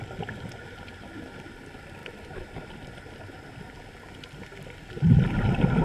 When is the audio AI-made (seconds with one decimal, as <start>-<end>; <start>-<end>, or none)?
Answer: 2.0-3.1